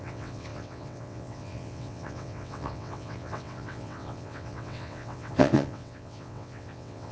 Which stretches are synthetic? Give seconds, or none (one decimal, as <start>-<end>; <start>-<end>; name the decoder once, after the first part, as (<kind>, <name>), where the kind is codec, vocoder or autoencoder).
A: 0.0-7.1 (vocoder, WaveNeXt)